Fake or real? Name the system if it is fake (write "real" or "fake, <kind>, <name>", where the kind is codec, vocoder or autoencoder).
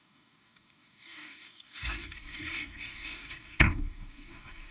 fake, codec, DAC